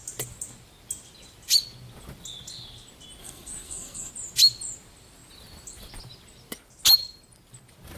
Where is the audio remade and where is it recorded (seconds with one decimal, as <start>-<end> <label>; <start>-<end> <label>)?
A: 0.0-3.2 recorded; 3.2-4.1 remade; 4.1-8.0 recorded